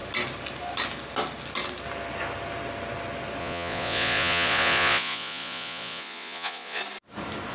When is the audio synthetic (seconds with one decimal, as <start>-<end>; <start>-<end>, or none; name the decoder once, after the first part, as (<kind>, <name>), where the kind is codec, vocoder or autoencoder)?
3.4-6.8 (vocoder, Vocos)